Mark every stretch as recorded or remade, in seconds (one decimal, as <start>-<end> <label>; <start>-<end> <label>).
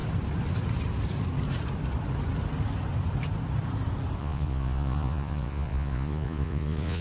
0.0-4.2 recorded; 4.2-7.0 remade